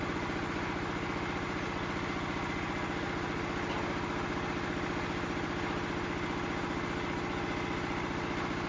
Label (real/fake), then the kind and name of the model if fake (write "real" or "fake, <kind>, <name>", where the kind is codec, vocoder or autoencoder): real